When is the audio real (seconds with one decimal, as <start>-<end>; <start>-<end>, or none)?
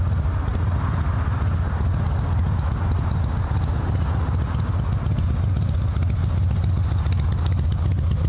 0.0-8.3